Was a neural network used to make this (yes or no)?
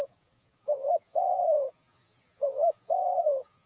yes